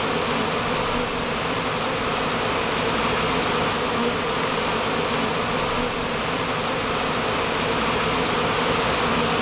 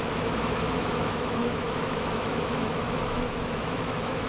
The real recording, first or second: first